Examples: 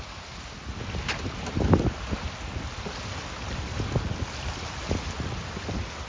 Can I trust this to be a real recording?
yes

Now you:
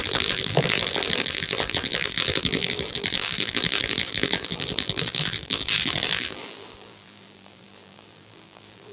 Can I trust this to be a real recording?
no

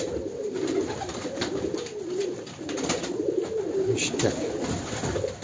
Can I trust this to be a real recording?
yes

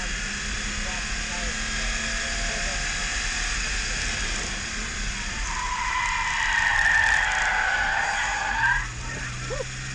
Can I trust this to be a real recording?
yes